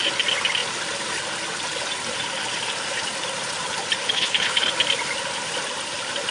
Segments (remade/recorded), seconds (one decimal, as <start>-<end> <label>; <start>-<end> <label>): 0.0-4.0 recorded; 4.0-4.7 remade; 4.7-6.3 recorded